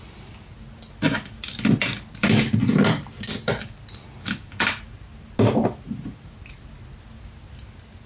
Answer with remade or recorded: recorded